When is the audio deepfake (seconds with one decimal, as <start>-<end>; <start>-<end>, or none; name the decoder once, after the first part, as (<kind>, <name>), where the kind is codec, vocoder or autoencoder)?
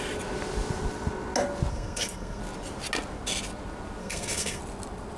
1.7-2.4 (codec, SNAC); 4.0-4.6